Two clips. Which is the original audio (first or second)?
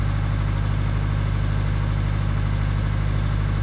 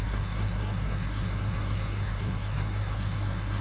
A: first